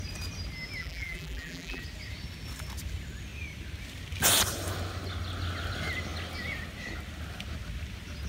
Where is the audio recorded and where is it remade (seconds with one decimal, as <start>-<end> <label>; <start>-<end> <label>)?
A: 0.0-0.8 recorded; 0.8-1.8 remade; 1.8-8.3 recorded